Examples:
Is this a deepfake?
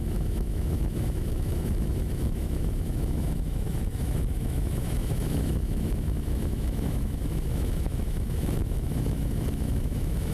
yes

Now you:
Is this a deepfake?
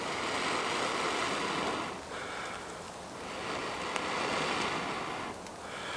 no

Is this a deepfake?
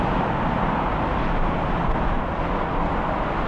no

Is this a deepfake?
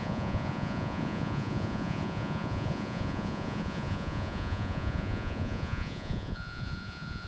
yes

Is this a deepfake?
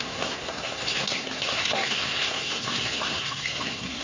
yes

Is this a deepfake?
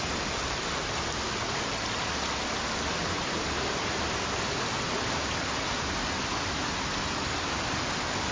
no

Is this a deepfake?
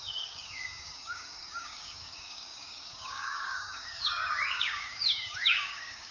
yes